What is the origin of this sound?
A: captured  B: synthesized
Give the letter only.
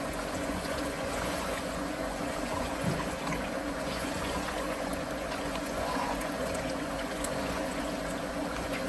B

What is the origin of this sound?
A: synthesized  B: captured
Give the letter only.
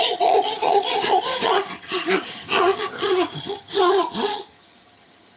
A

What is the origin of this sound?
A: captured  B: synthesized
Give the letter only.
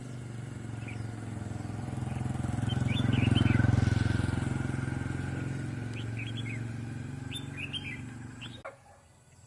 A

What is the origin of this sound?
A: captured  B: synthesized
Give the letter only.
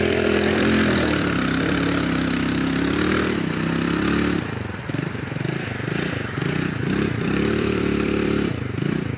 B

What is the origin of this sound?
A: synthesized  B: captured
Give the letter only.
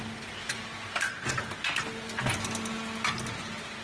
B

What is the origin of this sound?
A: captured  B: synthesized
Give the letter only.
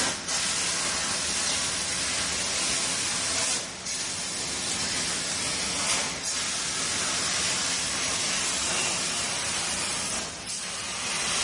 A